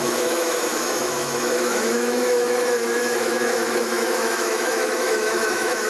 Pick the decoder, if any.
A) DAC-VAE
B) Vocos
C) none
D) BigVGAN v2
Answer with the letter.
A